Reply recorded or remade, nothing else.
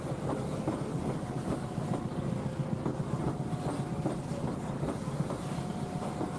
recorded